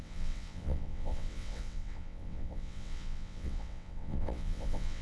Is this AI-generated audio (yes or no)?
yes